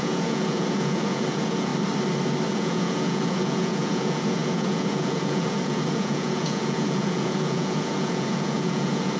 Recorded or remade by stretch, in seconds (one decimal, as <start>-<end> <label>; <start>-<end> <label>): 0.0-1.7 remade; 1.7-2.5 recorded; 2.5-9.2 remade